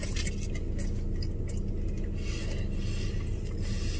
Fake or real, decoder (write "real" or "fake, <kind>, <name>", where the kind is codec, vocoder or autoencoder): real